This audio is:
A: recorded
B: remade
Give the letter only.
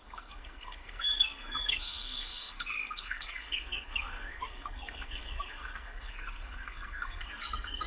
B